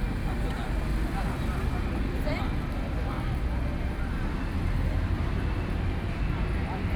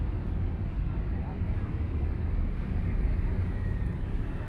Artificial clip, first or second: second